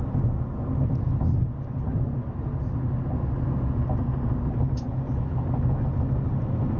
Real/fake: real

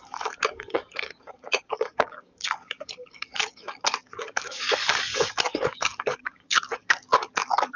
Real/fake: fake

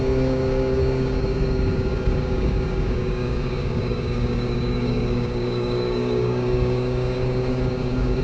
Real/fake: fake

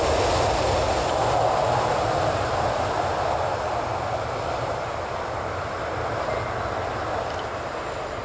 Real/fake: real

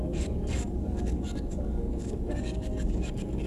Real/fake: fake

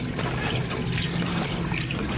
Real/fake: real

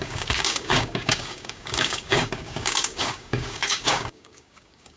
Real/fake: fake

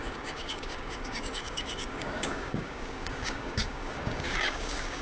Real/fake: fake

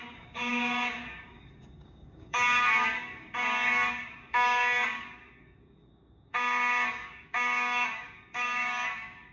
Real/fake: fake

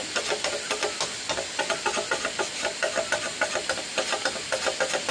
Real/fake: real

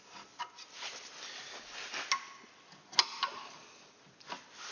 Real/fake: real